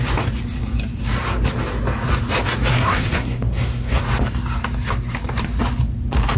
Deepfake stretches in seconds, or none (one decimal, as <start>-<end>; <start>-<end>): 2.7-4.0